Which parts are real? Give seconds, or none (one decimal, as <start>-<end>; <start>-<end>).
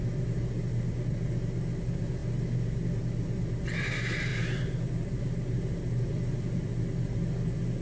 0.0-6.1; 6.7-7.8